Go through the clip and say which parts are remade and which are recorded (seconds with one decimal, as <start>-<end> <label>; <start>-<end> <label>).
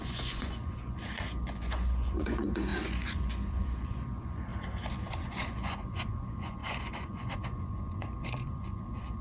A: 0.0-4.5 remade; 4.5-5.2 recorded; 5.2-9.2 remade